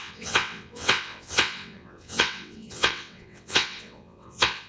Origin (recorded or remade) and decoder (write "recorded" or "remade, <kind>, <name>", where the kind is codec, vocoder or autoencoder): remade, vocoder, WaveNeXt